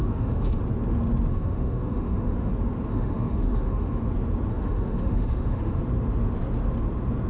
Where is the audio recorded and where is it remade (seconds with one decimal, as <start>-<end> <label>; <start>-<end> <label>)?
0.0-0.6 remade; 0.6-1.3 recorded; 1.3-2.5 remade; 2.5-2.9 recorded; 2.9-4.0 remade; 4.0-4.5 recorded; 4.5-5.8 remade; 5.8-7.3 recorded